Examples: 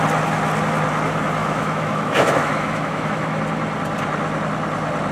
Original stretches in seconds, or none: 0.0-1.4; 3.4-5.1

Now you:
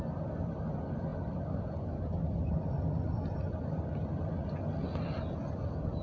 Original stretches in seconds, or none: 0.0-6.0

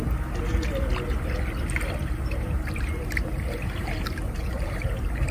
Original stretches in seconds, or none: 0.0-2.0